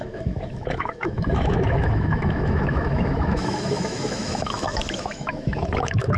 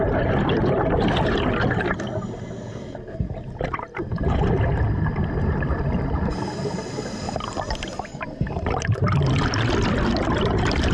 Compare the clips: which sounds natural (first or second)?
second